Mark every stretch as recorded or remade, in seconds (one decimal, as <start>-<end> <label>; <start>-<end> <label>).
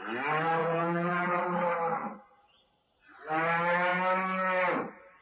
0.0-0.6 recorded; 0.6-1.4 remade; 1.4-5.2 recorded